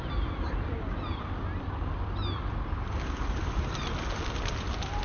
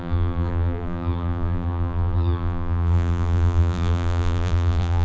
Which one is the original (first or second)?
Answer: first